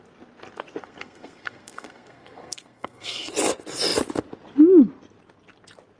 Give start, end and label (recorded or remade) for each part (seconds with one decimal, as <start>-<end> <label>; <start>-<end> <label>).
0.0-0.8 recorded; 0.8-3.3 remade; 3.3-6.0 recorded